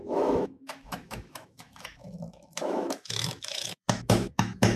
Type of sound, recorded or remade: remade